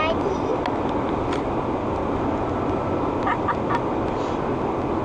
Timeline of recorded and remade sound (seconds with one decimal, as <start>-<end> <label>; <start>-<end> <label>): 0.0-5.0 recorded